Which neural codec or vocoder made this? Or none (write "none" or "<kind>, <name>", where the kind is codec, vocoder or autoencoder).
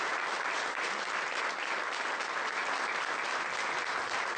none